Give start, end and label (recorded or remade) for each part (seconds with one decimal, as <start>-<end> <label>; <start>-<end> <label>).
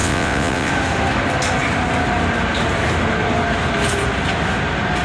0.0-0.7 remade; 0.7-5.0 recorded